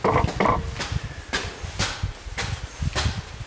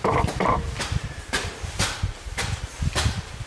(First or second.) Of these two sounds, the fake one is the second